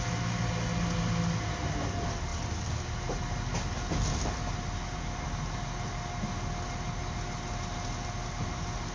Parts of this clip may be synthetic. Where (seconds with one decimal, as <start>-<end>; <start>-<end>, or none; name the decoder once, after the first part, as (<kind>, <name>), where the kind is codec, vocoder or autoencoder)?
none